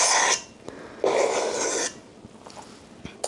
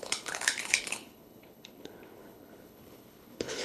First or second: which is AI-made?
second